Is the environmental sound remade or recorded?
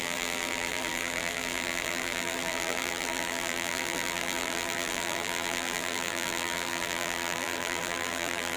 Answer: remade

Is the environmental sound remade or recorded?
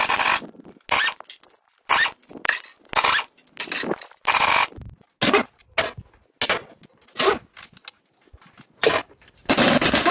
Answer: recorded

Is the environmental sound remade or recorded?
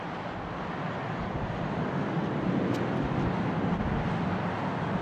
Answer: recorded